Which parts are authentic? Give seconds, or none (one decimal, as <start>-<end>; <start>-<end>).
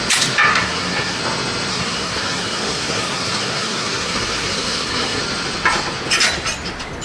0.0-0.5; 1.2-1.7; 5.2-7.0